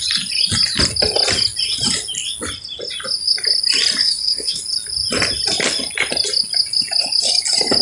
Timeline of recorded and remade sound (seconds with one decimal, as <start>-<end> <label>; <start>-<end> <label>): 0.0-4.0 recorded; 4.0-4.6 remade; 4.6-7.8 recorded